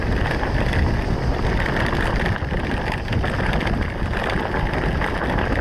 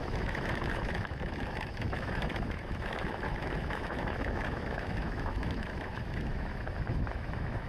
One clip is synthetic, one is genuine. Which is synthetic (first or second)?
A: second